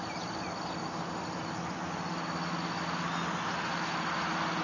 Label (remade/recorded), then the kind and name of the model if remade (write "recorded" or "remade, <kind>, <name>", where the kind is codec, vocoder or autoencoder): recorded